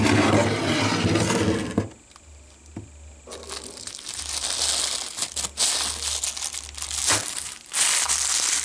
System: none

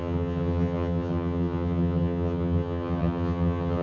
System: vocoder, HiFi-GAN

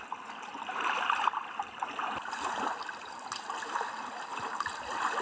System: none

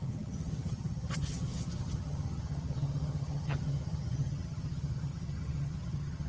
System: vocoder, HiFi-GAN